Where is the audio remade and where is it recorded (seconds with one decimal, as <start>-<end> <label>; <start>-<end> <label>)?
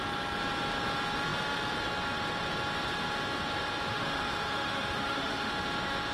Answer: 0.0-3.9 recorded; 3.9-5.5 remade; 5.5-6.1 recorded